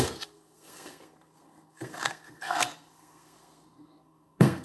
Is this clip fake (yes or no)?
yes